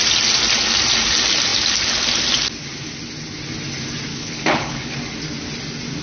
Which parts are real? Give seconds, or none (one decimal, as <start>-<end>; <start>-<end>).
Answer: 0.0-4.1; 4.9-6.0